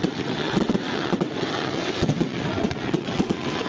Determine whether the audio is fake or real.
fake